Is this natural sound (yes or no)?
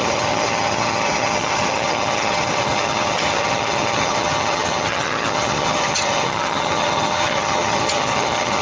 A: no